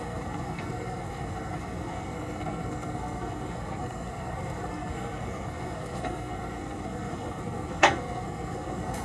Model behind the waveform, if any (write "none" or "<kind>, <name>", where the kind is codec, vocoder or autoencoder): codec, SNAC